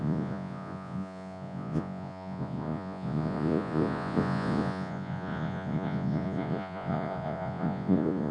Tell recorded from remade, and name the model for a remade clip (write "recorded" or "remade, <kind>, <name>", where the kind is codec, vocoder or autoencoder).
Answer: remade, vocoder, Vocos